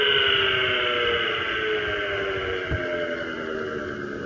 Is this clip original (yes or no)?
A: yes